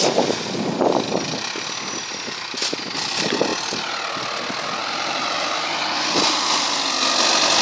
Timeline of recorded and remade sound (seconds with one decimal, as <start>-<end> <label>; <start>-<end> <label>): 0.0-4.8 recorded; 4.8-5.5 remade; 5.5-7.6 recorded

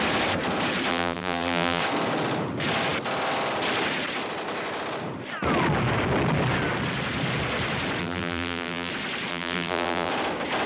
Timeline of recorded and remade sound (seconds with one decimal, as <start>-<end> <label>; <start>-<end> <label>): 0.0-0.9 recorded; 0.9-1.8 remade; 1.8-8.0 recorded; 8.0-8.9 remade; 8.9-9.3 recorded; 9.3-10.1 remade; 10.1-10.7 recorded

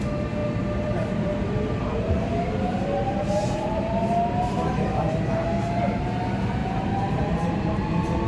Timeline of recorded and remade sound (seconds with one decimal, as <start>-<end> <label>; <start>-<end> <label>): 0.0-0.4 recorded; 0.4-5.3 remade; 5.3-6.6 recorded; 6.6-7.3 remade; 7.3-8.3 recorded